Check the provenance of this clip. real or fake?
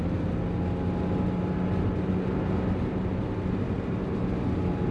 real